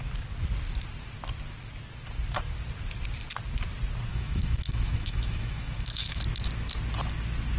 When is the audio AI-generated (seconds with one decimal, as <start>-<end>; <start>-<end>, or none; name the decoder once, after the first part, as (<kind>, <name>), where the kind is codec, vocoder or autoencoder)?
4.1-6.2 (autoencoder, DAC-VAE)

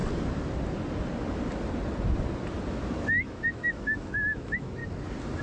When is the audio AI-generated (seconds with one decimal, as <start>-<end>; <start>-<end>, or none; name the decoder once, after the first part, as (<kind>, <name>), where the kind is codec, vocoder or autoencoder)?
2.7-4.8 (autoencoder, DAC-VAE)

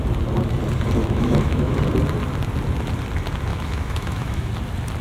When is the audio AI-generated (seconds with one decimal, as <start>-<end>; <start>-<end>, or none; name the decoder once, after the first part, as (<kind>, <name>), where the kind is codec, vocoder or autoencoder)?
1.0-1.8 (autoencoder, DAC-VAE); 3.5-4.5

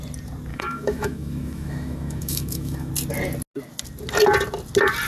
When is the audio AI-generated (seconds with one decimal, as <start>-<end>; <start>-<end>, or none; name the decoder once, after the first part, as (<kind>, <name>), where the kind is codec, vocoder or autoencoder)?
0.5-2.9 (autoencoder, DAC-VAE)

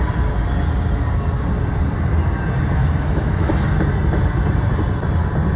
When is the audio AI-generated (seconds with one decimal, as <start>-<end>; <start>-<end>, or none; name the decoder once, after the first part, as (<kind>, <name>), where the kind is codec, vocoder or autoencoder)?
2.8-3.5 (autoencoder, DAC-VAE)

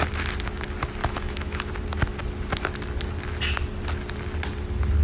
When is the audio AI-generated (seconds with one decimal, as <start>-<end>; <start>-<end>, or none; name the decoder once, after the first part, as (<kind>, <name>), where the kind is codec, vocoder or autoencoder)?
1.0-1.7 (autoencoder, DAC-VAE)